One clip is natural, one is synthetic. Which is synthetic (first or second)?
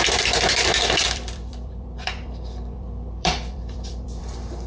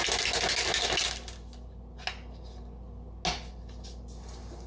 first